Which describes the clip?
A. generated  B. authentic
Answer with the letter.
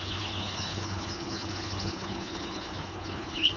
A